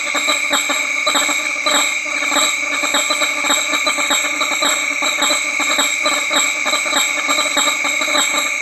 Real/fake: real